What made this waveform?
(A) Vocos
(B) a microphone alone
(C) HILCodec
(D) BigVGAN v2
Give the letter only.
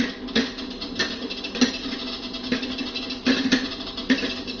B